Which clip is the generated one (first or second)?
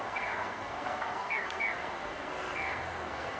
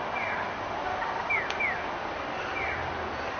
first